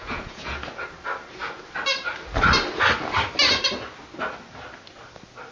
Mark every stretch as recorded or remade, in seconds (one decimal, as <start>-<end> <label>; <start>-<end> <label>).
0.0-0.8 remade; 0.8-5.5 recorded